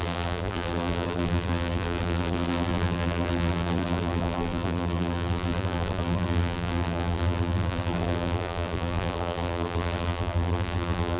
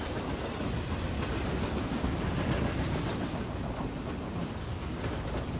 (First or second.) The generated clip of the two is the first